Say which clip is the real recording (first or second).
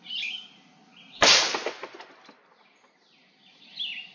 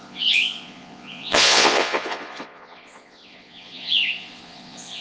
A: first